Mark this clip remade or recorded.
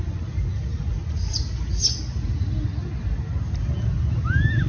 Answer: recorded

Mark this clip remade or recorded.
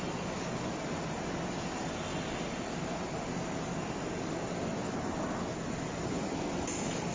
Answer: recorded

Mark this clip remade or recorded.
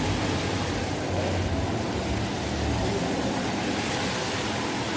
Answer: recorded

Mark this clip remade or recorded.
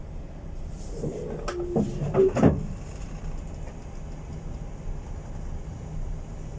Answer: recorded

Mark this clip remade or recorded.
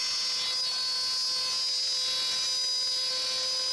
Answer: recorded